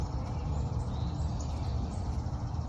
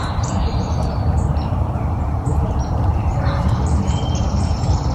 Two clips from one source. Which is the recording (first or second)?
first